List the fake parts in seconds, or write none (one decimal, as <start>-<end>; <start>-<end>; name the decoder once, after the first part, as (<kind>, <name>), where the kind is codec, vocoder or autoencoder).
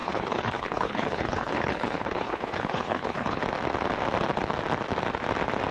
0.0-3.4 (codec, HILCodec)